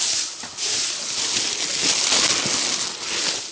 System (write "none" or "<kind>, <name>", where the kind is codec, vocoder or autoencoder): none